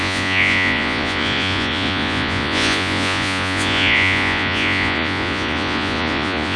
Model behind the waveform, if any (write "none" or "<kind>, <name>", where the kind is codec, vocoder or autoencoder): vocoder, Vocos